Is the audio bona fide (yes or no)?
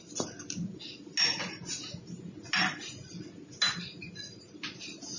yes